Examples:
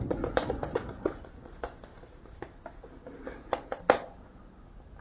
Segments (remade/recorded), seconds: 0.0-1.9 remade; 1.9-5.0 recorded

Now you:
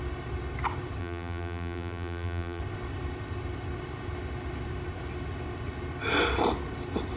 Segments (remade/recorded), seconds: 0.0-1.0 recorded; 1.0-2.6 remade; 2.6-7.2 recorded

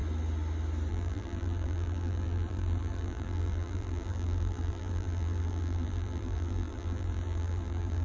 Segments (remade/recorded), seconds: 0.0-0.9 recorded; 0.9-8.0 remade